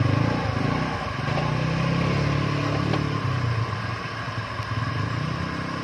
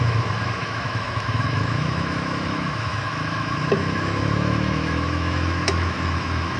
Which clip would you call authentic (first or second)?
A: first